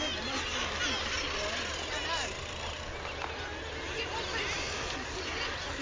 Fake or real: real